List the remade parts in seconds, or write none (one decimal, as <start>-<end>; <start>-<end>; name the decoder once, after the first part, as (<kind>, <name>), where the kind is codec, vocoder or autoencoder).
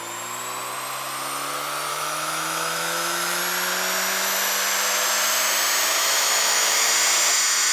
1.9-3.4 (autoencoder, DAC-VAE); 6.0-6.9